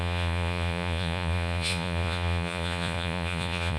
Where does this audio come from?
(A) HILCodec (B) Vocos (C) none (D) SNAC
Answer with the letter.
B